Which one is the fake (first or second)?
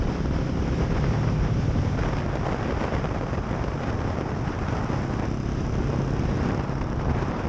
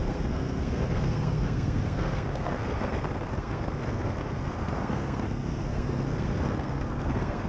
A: second